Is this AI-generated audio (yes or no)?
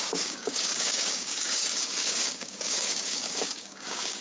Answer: yes